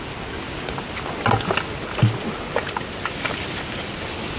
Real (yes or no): yes